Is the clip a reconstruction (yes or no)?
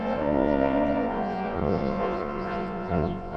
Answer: yes